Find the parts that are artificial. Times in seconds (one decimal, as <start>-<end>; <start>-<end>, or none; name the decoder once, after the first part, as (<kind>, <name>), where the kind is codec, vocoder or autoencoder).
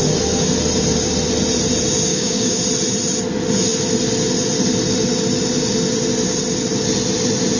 2.1-2.6 (codec, DAC)